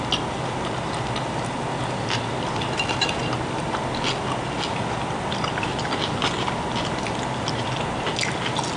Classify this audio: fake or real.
real